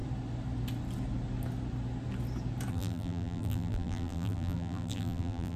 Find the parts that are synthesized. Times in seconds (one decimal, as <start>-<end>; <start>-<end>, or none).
2.7-5.6